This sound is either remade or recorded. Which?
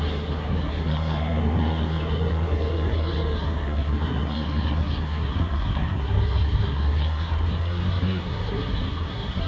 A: remade